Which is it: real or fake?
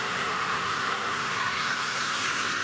fake